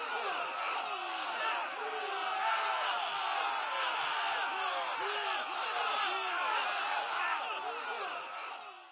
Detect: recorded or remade recorded